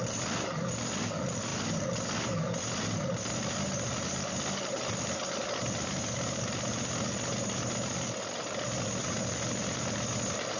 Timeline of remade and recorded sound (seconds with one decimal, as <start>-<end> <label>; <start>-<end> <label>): 0.0-10.6 recorded